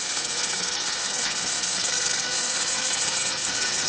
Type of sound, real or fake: fake